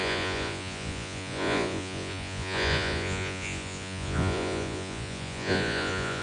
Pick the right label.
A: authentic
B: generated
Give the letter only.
B